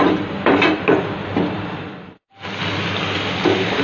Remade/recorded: recorded